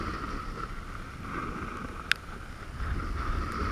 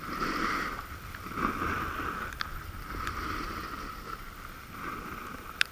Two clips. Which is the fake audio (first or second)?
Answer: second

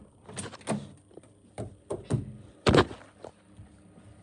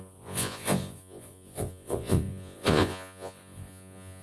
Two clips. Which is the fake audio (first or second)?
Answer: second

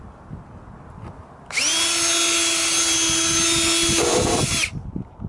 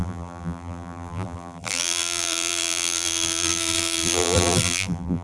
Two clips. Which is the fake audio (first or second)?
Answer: second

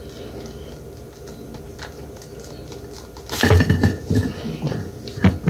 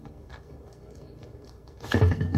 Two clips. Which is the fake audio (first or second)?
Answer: second